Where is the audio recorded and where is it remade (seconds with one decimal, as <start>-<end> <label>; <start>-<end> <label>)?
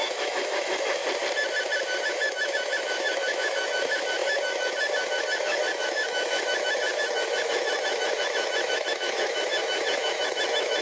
0.0-1.0 remade; 1.0-2.0 recorded; 2.0-10.8 remade